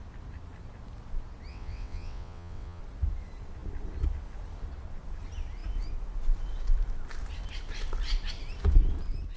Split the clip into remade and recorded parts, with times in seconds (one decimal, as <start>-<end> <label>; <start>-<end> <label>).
0.0-1.5 recorded; 1.5-2.8 remade; 2.8-9.4 recorded